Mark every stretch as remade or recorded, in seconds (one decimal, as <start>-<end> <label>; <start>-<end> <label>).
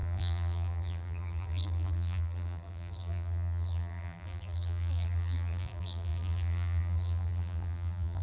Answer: 0.0-8.2 remade